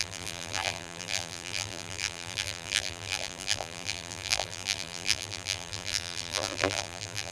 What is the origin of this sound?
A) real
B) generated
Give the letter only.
B